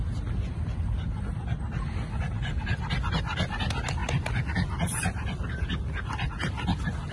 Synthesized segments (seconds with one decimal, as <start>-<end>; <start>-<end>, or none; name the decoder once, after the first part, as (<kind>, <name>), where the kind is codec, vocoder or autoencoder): none